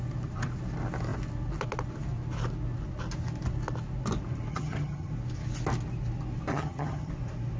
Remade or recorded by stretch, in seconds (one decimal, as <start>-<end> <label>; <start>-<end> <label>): 0.0-4.5 recorded; 4.5-5.1 remade; 5.1-6.5 recorded; 6.5-7.1 remade; 7.1-7.6 recorded

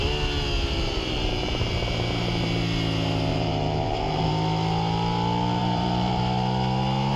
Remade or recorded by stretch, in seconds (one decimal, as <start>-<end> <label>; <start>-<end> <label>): 0.0-0.7 recorded; 0.7-1.7 remade; 1.7-3.3 recorded; 3.3-4.3 remade; 4.3-5.6 recorded; 5.6-6.2 remade; 6.2-7.2 recorded